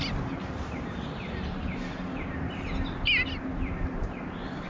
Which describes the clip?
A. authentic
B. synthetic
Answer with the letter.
A